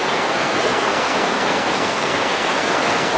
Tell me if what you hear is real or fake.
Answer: fake